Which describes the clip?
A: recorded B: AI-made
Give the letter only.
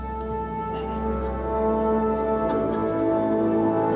A